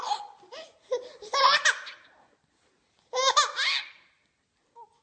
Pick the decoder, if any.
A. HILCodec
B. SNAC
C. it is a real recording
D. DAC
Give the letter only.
C